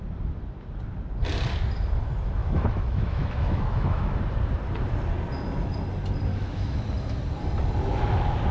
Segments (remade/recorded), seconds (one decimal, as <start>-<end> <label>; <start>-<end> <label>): 0.0-2.4 recorded; 2.4-4.2 remade; 4.2-6.3 recorded; 6.3-6.8 remade; 6.8-8.5 recorded